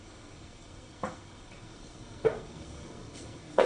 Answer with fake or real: fake